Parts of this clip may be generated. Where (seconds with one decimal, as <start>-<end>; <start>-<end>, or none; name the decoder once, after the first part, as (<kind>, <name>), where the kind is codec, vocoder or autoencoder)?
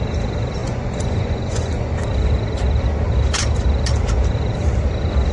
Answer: 0.6-2.0 (vocoder, Vocos)